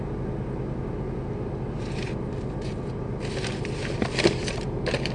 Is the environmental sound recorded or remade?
recorded